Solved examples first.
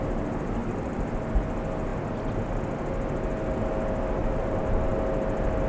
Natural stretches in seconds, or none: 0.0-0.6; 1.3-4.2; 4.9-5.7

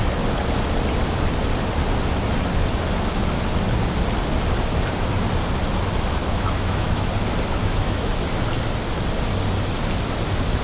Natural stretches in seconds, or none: 0.0-6.2; 7.1-7.6; 8.1-10.6

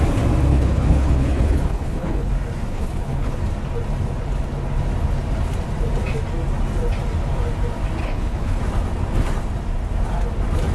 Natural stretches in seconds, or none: 0.0-0.5; 2.3-2.7; 3.4-8.0; 8.6-10.7

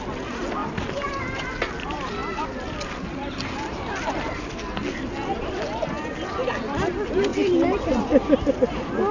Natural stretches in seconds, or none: 0.0-9.1

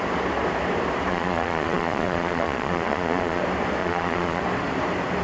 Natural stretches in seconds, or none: 0.0-1.1; 3.4-3.8; 4.4-5.2

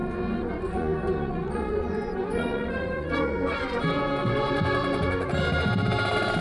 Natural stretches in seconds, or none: 3.8-4.2; 5.3-6.4

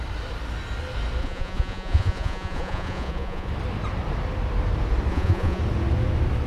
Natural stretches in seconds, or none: 0.0-1.2; 3.5-5.1; 5.6-6.5